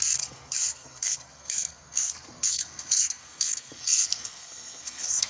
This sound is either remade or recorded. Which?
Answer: remade